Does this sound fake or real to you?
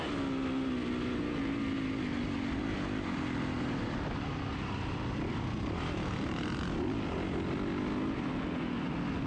real